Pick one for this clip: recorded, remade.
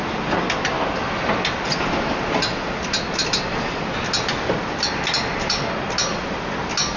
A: recorded